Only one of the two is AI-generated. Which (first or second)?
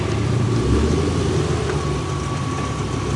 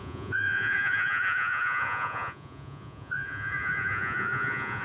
second